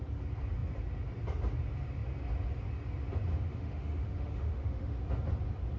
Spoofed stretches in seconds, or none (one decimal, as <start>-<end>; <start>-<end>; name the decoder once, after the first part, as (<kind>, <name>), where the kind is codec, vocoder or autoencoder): 3.3-5.0 (autoencoder, DAC-VAE)